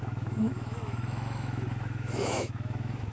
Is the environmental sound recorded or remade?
remade